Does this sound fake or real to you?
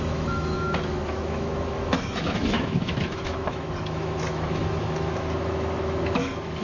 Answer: fake